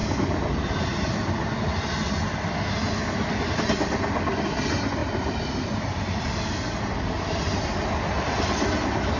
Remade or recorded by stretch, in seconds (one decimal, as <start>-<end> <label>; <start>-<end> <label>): 0.0-9.2 recorded